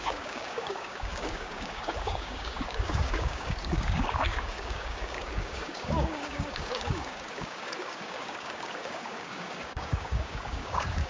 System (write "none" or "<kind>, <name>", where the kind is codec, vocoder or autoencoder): codec, DAC